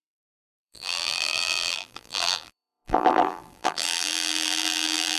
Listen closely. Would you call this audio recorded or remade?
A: remade